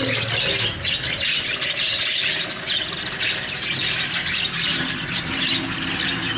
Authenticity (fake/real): real